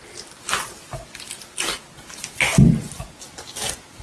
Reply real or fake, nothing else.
real